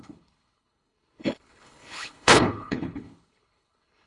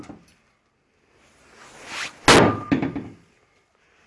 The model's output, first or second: first